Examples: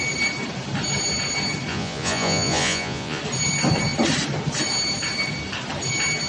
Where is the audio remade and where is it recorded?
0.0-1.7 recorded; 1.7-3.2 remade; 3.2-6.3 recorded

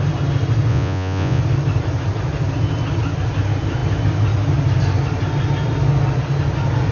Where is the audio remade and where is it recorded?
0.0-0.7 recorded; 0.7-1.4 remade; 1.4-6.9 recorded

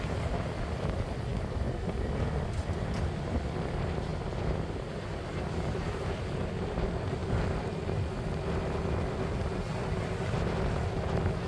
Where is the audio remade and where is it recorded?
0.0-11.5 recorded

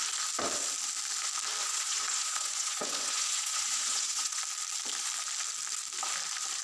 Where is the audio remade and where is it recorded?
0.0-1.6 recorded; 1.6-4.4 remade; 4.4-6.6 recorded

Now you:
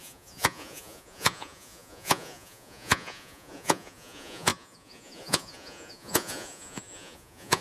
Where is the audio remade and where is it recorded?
0.0-7.6 remade

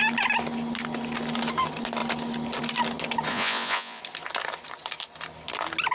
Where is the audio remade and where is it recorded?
0.0-3.3 recorded; 3.3-4.0 remade; 4.0-5.9 recorded

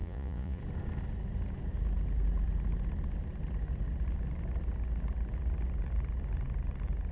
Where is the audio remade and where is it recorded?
0.0-0.6 remade; 0.6-7.1 recorded